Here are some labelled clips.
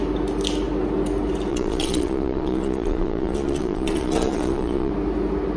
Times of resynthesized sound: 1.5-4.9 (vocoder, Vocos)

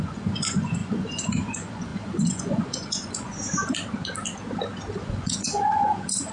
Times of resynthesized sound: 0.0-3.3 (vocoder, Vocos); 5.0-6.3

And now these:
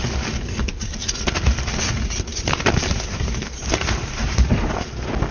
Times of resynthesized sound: 2.3-4.7 (vocoder, BigVGAN v2)

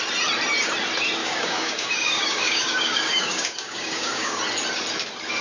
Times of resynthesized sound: 1.2-4.4 (codec, DAC)

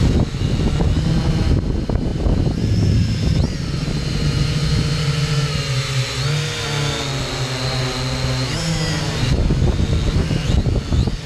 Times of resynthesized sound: none

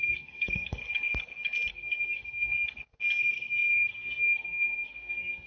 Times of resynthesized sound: 0.0-0.8 (codec, SNAC); 1.7-2.5; 3.2-5.5